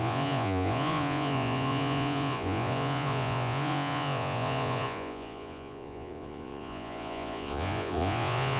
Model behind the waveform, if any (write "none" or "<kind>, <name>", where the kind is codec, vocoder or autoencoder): vocoder, Vocos